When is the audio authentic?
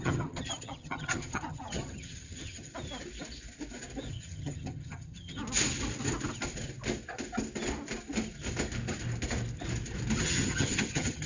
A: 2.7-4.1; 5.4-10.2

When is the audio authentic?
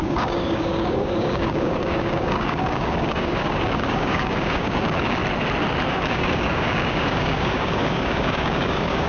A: 5.2-5.9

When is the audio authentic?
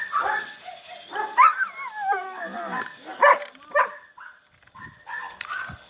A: 0.0-5.9